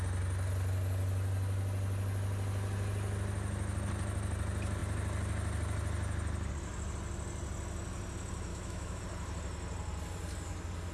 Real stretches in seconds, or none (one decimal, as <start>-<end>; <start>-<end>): 0.0-8.5; 9.0-10.9